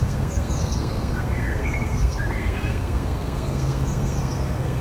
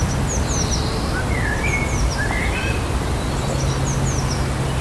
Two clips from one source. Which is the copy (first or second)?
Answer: first